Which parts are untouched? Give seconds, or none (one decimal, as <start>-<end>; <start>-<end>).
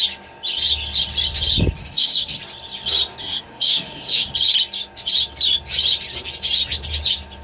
0.0-1.8; 2.4-3.2; 4.3-7.4